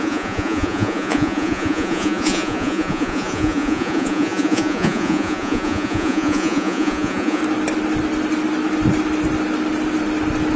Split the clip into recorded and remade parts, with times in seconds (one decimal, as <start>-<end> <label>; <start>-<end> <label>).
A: 0.0-7.4 remade; 7.4-10.6 recorded